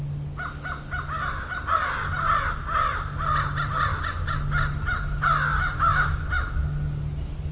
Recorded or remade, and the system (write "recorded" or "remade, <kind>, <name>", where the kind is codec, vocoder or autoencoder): recorded